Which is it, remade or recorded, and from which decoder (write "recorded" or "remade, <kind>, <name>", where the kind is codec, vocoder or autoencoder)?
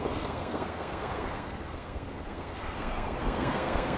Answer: remade, codec, SNAC